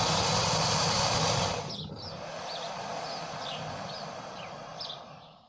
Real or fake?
real